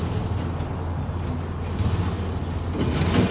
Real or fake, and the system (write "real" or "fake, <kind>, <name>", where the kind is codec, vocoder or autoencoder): real